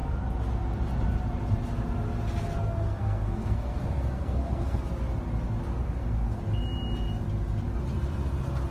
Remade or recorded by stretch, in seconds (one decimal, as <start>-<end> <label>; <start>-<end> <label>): 0.0-2.6 recorded; 2.6-4.8 remade; 4.8-5.8 recorded; 5.8-6.4 remade; 6.4-8.7 recorded

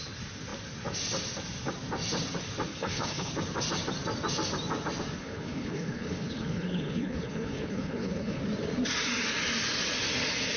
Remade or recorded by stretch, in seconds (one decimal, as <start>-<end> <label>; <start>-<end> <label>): 0.0-2.7 recorded; 2.7-3.3 remade; 3.3-5.2 recorded; 5.2-8.4 remade; 8.4-10.6 recorded

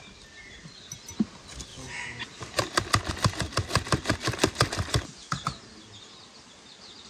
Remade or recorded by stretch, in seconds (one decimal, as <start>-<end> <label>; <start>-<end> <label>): 0.0-7.1 recorded

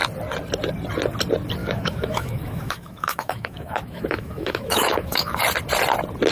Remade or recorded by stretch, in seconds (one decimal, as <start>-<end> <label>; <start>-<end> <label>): 0.0-1.6 recorded; 1.6-5.4 remade; 5.4-6.3 recorded

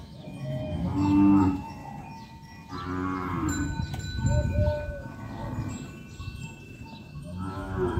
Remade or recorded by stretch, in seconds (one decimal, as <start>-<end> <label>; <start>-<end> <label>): 0.0-1.8 remade; 1.8-6.6 recorded; 6.6-8.0 remade

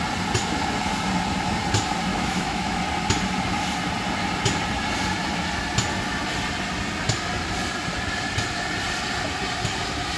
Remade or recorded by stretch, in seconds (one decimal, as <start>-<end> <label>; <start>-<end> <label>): 0.0-2.1 recorded; 2.1-2.8 remade; 2.8-10.2 recorded

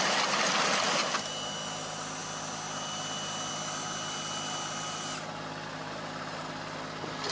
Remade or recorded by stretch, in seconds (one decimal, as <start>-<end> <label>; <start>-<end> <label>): 0.0-7.3 recorded